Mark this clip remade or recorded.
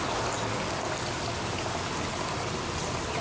recorded